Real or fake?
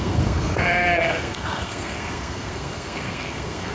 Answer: fake